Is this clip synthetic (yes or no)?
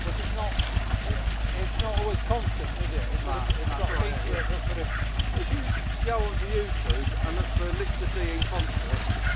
no